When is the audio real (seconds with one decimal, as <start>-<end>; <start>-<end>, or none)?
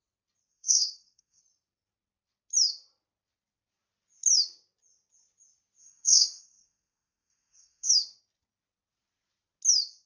0.0-0.5; 1.4-5.8; 7.9-10.1